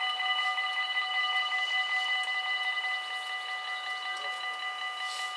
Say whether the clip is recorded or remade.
recorded